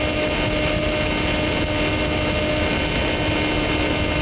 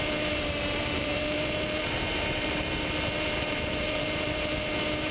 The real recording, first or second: first